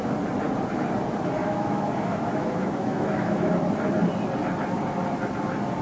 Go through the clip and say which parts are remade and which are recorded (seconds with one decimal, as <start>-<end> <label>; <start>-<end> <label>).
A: 0.0-1.4 recorded; 1.4-3.5 remade; 3.5-5.8 recorded